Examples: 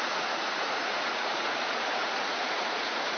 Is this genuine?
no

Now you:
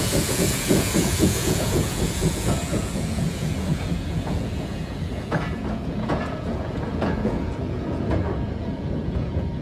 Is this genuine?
no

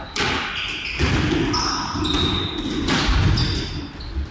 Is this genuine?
yes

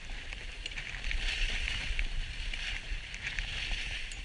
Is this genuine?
yes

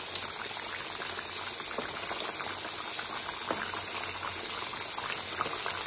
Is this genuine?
yes